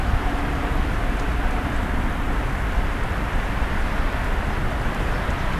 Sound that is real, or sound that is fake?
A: fake